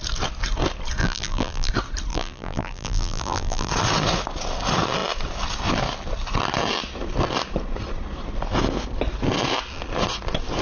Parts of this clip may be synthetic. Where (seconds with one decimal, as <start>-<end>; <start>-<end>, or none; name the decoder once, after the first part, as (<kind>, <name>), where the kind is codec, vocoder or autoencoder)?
1.0-1.7 (vocoder, BigVGAN v2); 2.1-3.7